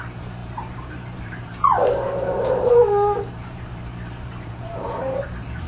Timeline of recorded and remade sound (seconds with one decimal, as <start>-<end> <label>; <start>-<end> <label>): 0.0-5.7 remade